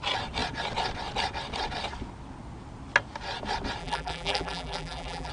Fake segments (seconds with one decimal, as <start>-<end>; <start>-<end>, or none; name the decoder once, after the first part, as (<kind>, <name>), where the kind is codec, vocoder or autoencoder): 3.8-5.3 (vocoder, BigVGAN v2)